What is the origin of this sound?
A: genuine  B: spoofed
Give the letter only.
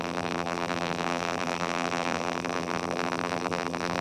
B